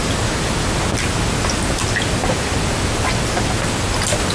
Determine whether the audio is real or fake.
real